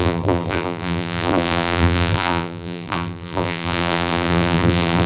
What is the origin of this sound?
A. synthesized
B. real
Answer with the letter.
A